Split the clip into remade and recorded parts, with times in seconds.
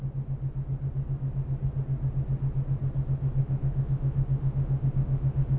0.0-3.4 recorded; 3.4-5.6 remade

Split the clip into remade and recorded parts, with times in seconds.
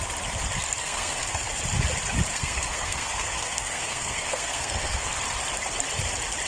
0.0-0.8 recorded; 0.8-1.5 remade; 1.5-2.3 recorded; 2.3-5.1 remade; 5.1-6.5 recorded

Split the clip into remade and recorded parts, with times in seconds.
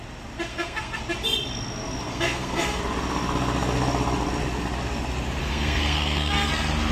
0.0-0.5 recorded; 0.5-1.0 remade; 1.0-2.1 recorded; 2.1-2.8 remade; 2.8-5.4 recorded; 5.4-6.5 remade; 6.5-6.9 recorded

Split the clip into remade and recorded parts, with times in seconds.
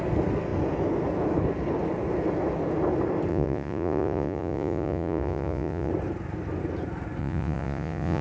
0.0-3.3 recorded; 3.3-5.9 remade; 5.9-7.2 recorded; 7.2-8.2 remade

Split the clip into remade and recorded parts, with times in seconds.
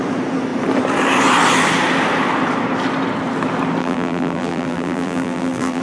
0.0-3.8 recorded; 3.8-5.8 remade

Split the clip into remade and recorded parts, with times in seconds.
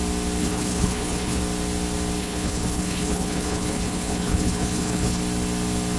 0.0-0.4 recorded; 0.4-1.4 remade; 1.4-2.2 recorded; 2.2-5.2 remade; 5.2-6.0 recorded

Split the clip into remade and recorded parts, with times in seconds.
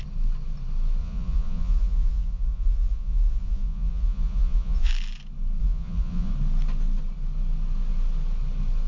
0.0-1.0 recorded; 1.0-4.9 remade; 4.9-5.6 recorded; 5.6-6.3 remade; 6.3-8.9 recorded